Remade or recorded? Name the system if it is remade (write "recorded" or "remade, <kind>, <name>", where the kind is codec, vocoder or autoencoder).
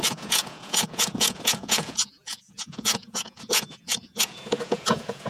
remade, vocoder, Vocos